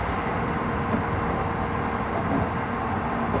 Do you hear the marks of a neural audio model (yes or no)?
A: no